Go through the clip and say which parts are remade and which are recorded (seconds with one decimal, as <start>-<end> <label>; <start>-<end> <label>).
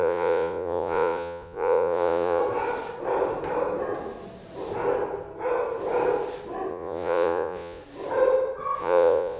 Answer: 0.0-2.4 remade; 2.4-6.7 recorded; 6.7-7.8 remade; 7.8-8.8 recorded; 8.8-9.4 remade